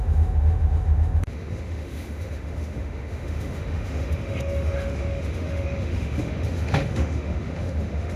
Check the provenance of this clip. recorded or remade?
remade